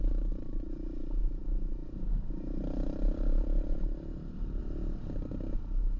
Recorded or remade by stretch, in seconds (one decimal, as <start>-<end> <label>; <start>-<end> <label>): 0.0-6.0 recorded